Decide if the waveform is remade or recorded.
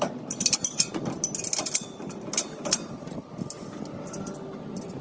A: recorded